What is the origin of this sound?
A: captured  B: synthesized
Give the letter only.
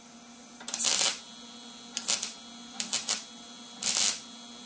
A